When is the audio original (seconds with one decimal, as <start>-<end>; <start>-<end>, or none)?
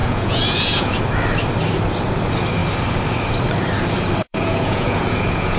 1.0-4.2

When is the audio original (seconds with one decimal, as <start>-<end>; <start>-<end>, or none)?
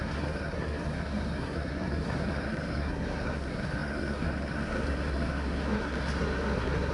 none